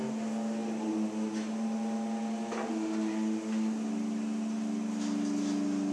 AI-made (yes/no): no